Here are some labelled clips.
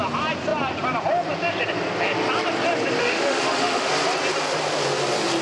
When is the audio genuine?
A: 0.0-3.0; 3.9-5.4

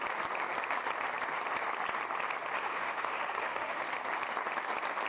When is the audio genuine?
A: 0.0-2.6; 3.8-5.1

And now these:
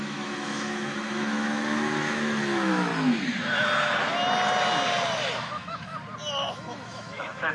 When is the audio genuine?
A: 2.9-5.4; 5.9-6.5

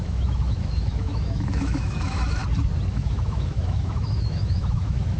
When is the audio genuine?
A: 2.4-2.9

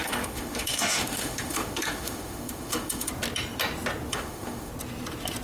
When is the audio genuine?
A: 3.1-4.1; 4.7-5.4

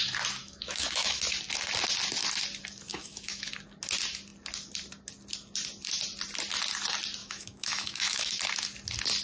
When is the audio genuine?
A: 0.0-0.4; 1.2-2.9; 3.5-7.2; 8.4-9.2

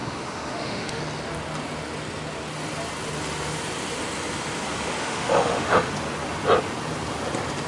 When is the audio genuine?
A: 1.0-5.0; 5.9-7.7

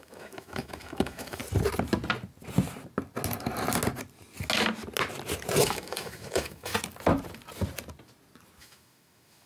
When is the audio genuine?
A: 1.4-5.6; 6.7-8.6